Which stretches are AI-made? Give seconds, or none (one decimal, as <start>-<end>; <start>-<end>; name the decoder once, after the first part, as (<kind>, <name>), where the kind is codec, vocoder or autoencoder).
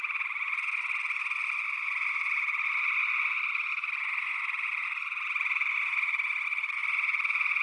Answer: 4.8-6.0 (vocoder, BigVGAN v2)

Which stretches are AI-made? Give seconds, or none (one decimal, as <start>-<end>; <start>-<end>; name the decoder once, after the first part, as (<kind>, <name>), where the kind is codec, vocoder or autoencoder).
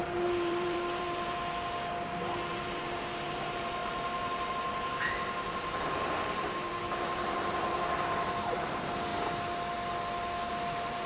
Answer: 0.0-1.4 (vocoder, BigVGAN v2); 2.5-9.1; 10.5-11.1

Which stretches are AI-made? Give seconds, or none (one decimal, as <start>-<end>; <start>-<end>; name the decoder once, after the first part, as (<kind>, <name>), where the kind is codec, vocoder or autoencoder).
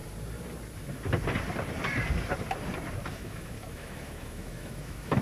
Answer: 3.1-5.2 (autoencoder, DAC-VAE)